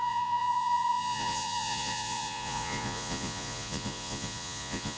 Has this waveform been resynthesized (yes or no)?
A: yes